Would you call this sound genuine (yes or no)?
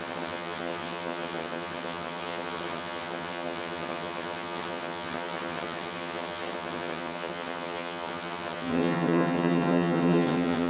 no